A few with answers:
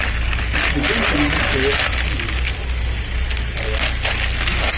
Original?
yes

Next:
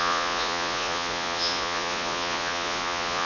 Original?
no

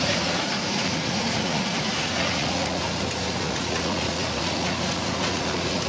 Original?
no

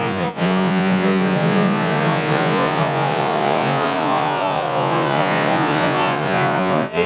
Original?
no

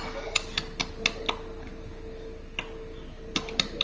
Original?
yes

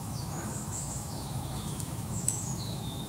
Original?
no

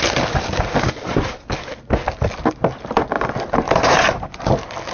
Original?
yes